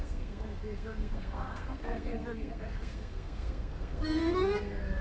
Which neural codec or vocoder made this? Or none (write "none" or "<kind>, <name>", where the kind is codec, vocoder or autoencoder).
codec, SNAC